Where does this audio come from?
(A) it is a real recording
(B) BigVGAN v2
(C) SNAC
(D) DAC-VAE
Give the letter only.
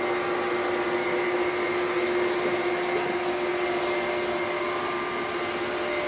A